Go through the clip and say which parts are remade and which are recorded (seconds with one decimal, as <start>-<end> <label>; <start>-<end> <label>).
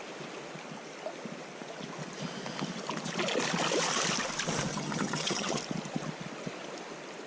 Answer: 0.0-4.7 recorded; 4.7-5.6 remade; 5.6-7.3 recorded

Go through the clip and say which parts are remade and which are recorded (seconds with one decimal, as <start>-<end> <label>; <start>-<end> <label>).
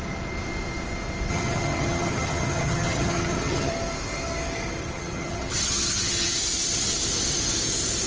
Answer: 0.0-1.3 recorded; 1.3-3.7 remade; 3.7-4.8 recorded; 4.8-6.3 remade; 6.3-8.1 recorded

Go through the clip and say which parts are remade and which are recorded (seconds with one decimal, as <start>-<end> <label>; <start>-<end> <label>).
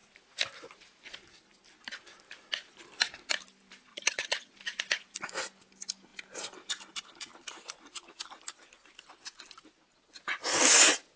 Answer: 0.0-3.9 recorded; 3.9-4.5 remade; 4.5-11.2 recorded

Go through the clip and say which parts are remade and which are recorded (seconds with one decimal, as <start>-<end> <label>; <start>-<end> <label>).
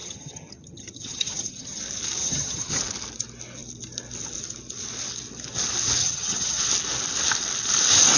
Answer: 0.0-1.8 remade; 1.8-2.2 recorded; 2.2-2.8 remade; 2.8-6.0 recorded; 6.0-6.6 remade; 6.6-8.2 recorded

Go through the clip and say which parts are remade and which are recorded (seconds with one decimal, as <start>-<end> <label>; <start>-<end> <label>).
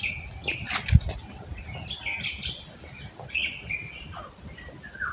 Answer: 0.0-5.1 recorded